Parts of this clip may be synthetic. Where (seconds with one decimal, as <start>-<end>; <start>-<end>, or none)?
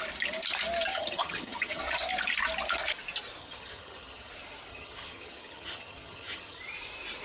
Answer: 0.9-1.8; 3.4-4.3; 4.7-6.6